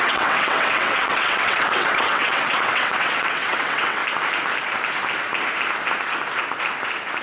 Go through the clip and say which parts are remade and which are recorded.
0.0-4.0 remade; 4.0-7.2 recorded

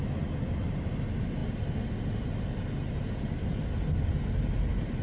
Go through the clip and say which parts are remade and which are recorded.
0.0-5.0 recorded

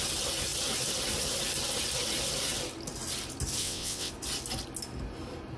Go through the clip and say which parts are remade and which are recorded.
0.0-3.6 recorded; 3.6-4.1 remade; 4.1-5.6 recorded